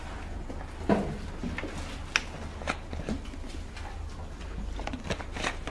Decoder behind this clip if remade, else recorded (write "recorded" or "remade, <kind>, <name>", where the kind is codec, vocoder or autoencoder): recorded